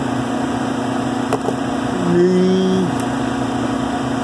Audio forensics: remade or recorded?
recorded